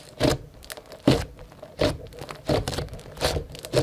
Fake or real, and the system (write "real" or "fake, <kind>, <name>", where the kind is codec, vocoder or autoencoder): real